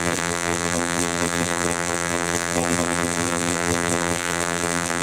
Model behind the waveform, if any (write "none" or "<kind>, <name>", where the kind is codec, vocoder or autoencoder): vocoder, BigVGAN v2